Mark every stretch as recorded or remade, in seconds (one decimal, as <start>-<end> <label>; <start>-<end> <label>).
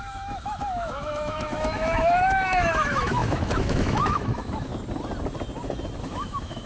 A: 0.0-4.7 remade; 4.7-6.0 recorded; 6.0-6.7 remade